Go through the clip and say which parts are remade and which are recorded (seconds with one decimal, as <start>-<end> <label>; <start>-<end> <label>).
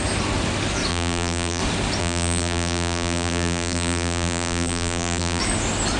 0.0-0.9 recorded; 0.9-1.6 remade; 1.6-2.0 recorded; 2.0-5.4 remade; 5.4-6.0 recorded